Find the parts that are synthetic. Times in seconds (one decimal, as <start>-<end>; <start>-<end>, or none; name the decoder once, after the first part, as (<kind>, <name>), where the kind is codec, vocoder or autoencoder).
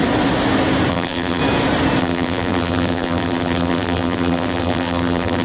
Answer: 0.9-1.4 (vocoder, BigVGAN v2); 2.0-5.4